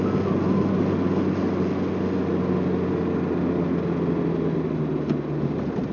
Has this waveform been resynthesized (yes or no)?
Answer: no